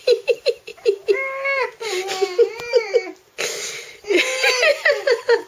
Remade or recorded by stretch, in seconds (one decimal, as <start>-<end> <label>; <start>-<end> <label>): 0.0-4.7 recorded; 4.7-5.5 remade